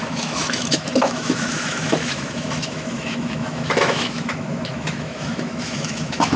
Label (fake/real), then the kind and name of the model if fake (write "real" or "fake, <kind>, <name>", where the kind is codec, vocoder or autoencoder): fake, autoencoder, DAC-VAE